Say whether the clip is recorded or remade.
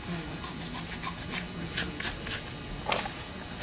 recorded